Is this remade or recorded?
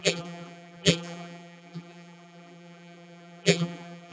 remade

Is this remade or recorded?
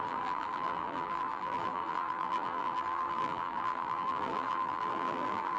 remade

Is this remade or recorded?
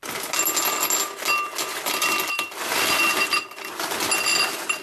recorded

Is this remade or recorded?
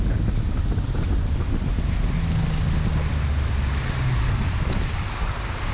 recorded